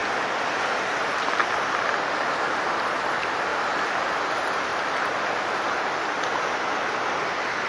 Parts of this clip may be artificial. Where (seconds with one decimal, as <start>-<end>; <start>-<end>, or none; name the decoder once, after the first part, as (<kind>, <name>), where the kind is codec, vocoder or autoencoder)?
3.5-4.2 (vocoder, BigVGAN v2)